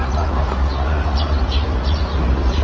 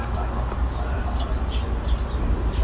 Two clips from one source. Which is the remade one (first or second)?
first